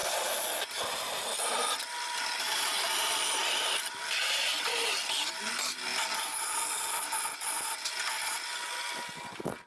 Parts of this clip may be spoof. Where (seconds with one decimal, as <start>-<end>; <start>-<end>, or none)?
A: none